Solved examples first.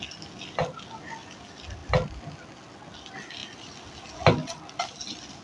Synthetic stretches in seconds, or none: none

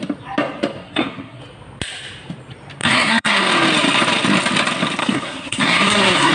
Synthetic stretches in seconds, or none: 0.8-1.4 (codec, SNAC); 2.8-3.4; 5.0-6.3

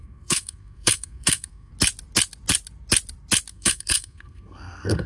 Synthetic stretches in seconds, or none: 0.0-1.7 (codec, SNAC); 3.5-5.1